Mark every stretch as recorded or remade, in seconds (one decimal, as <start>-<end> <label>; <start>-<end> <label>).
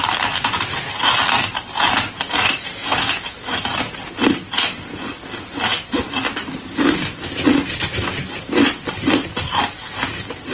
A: 0.0-2.8 recorded; 2.8-3.7 remade; 3.7-10.5 recorded